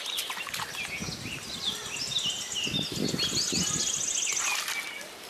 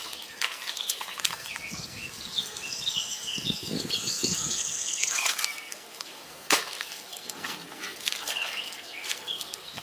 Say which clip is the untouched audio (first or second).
first